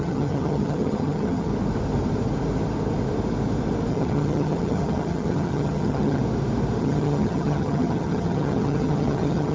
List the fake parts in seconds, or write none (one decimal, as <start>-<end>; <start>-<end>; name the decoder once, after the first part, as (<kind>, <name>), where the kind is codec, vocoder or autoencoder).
0.0-1.5 (vocoder, HiFi-GAN); 3.9-6.2; 6.8-9.5